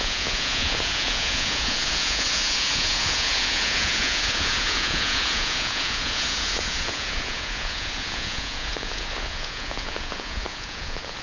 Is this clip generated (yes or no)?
yes